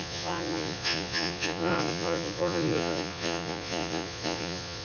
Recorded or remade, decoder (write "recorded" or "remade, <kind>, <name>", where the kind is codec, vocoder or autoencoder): remade, vocoder, Vocos